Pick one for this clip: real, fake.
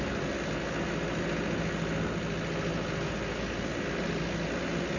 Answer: real